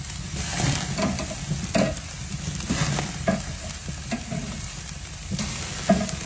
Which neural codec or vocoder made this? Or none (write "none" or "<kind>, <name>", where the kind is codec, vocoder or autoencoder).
none